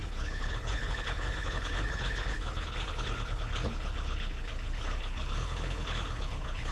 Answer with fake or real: fake